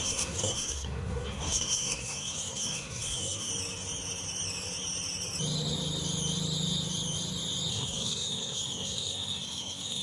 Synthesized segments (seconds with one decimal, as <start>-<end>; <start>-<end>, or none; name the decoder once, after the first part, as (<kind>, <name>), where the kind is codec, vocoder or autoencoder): 0.0-3.5 (codec, SNAC); 7.7-10.0